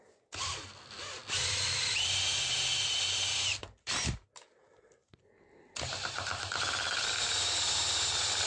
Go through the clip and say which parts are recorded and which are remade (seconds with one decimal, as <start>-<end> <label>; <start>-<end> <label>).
0.0-8.5 recorded